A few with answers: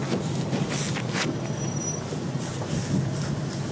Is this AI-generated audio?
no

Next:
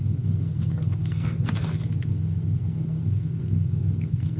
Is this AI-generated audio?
yes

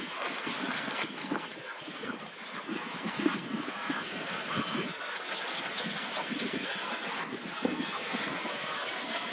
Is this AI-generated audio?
yes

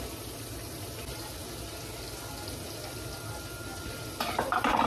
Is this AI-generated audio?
no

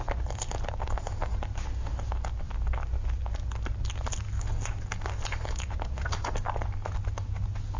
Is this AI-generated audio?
no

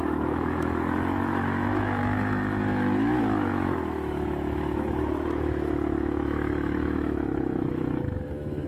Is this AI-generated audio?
yes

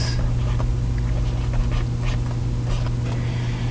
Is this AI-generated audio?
no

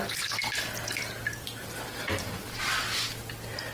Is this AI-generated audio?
no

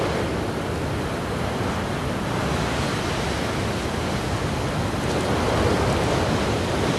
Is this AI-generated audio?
no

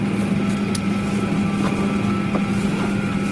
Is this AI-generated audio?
no